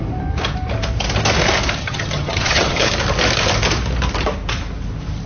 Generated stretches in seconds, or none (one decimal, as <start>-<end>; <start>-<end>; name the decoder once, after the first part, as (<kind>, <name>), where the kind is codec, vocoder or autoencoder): 1.8-2.9 (vocoder, HiFi-GAN)